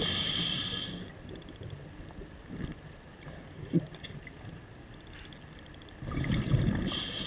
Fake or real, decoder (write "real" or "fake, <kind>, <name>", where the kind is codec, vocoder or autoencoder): real